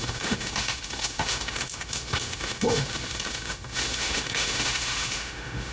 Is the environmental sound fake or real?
fake